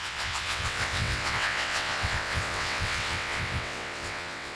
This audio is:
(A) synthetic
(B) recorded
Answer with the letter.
A